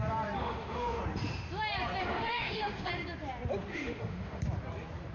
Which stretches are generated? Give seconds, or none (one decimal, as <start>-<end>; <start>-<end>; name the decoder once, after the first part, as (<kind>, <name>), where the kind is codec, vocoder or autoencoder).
0.4-1.0 (autoencoder, DAC-VAE); 2.0-2.9; 3.7-4.4